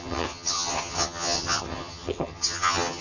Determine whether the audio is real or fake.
fake